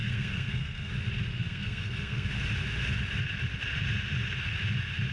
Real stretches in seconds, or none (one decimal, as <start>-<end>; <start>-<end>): 0.9-1.3; 2.3-5.1

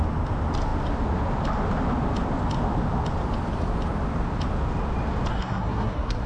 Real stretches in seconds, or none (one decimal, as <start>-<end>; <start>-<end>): 0.0-5.3

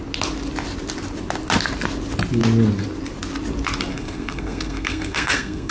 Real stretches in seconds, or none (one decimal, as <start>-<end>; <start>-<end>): 0.0-3.9